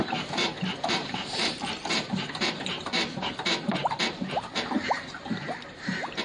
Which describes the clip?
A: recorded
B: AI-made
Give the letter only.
B